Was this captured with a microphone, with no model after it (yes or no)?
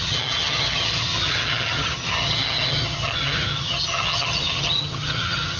no